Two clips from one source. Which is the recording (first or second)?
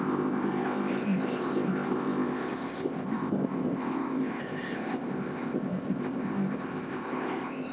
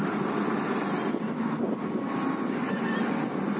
second